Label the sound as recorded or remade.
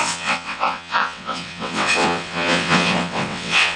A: remade